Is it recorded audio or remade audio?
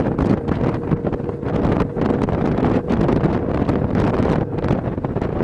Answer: recorded